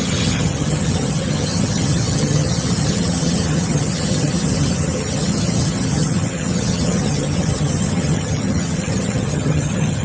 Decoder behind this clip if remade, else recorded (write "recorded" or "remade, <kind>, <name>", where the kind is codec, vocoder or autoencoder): remade, vocoder, HiFi-GAN